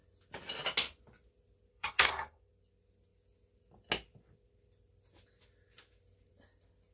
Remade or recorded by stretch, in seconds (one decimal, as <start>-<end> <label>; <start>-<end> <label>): 0.0-1.7 recorded; 1.7-2.5 remade; 2.5-6.9 recorded